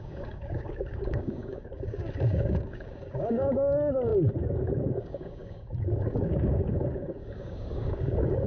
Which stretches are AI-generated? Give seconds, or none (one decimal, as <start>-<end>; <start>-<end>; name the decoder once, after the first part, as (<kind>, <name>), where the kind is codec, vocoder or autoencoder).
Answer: 0.0-8.5 (codec, DAC)